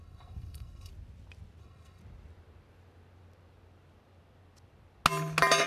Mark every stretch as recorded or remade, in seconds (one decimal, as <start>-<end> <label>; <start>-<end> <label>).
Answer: 0.0-0.9 remade; 0.9-1.6 recorded; 1.6-2.0 remade; 2.0-5.7 recorded